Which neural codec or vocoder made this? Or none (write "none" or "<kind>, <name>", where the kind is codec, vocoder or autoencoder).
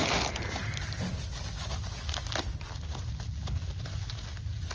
none